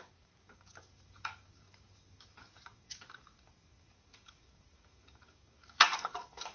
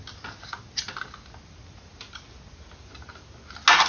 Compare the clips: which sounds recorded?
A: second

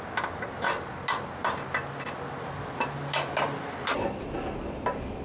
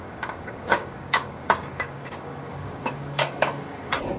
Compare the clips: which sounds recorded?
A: first